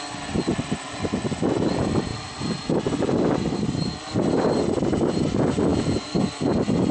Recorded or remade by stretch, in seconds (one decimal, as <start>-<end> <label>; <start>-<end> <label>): 0.0-6.9 recorded